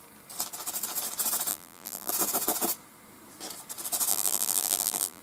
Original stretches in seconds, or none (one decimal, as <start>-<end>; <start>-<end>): 0.0-1.5; 2.1-4.1